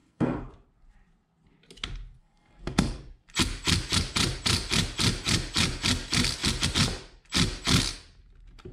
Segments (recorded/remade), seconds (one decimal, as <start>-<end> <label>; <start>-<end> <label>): 0.0-0.5 remade; 0.5-2.2 recorded; 2.2-3.0 remade; 3.0-8.7 recorded